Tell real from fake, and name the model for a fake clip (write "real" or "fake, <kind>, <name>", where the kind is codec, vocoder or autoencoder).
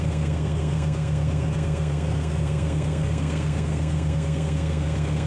fake, codec, SNAC